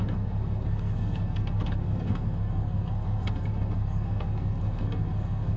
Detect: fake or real fake